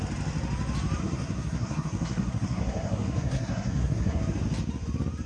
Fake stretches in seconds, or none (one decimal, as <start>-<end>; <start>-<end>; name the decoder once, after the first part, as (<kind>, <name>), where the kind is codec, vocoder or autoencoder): 1.0-4.2 (codec, SNAC)